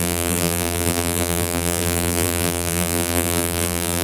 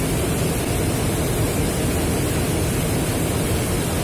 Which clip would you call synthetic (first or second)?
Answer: first